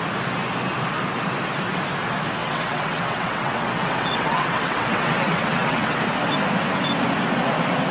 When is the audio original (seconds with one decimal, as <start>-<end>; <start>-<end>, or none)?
0.0-2.4; 6.0-7.9